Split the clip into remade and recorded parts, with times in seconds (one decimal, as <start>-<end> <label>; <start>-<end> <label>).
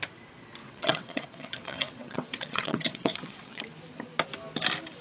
0.0-0.6 recorded; 0.6-3.6 remade; 3.6-5.0 recorded